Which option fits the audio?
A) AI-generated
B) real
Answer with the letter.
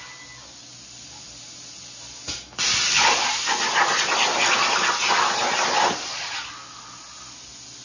B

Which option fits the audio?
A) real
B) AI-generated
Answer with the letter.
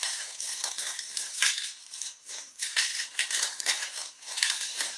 B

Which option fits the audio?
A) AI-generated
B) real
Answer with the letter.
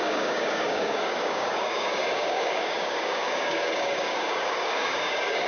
A